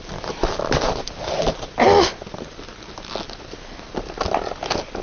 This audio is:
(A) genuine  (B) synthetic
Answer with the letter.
A